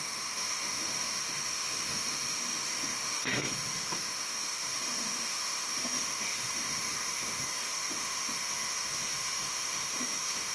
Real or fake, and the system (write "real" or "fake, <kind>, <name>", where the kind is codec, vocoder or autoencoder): fake, autoencoder, DAC-VAE